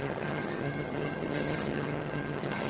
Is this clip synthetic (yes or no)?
yes